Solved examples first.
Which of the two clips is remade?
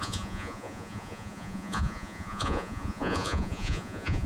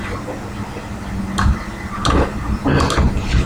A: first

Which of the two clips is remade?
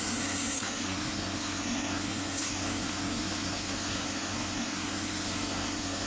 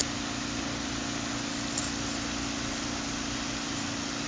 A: first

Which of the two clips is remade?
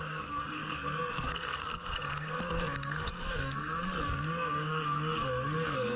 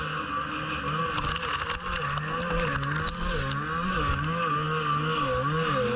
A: first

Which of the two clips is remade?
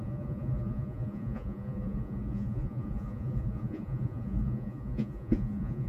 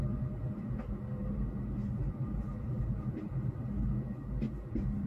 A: first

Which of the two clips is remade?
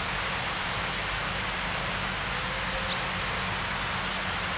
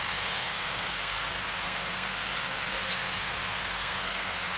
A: second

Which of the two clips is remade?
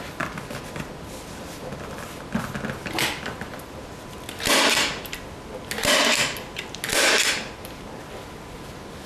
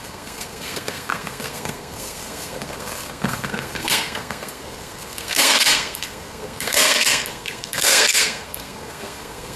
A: second